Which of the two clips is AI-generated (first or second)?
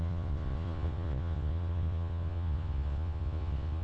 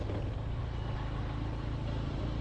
first